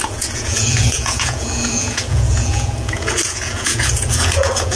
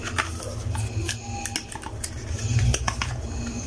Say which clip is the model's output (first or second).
first